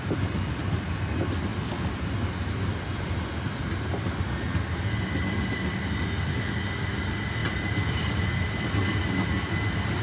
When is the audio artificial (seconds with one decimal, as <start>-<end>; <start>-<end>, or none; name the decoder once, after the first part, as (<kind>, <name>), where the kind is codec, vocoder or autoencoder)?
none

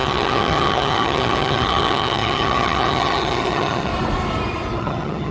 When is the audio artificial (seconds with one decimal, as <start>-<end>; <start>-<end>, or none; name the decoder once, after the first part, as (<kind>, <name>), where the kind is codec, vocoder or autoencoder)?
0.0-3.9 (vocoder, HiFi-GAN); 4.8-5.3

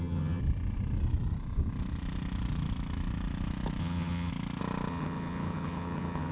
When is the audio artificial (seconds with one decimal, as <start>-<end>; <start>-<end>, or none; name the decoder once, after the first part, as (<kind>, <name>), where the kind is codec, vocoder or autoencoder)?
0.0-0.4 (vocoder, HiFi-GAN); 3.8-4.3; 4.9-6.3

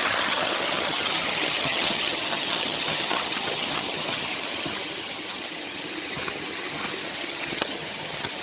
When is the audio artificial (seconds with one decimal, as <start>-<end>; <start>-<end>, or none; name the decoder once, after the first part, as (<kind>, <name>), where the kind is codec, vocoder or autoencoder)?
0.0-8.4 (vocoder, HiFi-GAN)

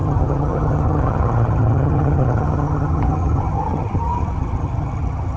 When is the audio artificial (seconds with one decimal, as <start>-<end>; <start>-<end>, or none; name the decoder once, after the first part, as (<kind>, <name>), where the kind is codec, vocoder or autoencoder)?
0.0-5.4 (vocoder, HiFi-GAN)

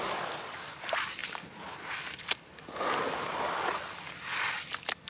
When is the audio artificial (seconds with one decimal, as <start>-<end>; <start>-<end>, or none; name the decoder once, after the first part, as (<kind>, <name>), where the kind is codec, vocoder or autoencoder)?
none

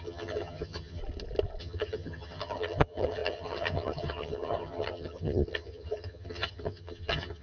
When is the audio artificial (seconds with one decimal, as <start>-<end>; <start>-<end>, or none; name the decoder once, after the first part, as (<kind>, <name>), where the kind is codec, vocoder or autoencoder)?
0.0-1.0 (vocoder, HiFi-GAN); 1.6-7.4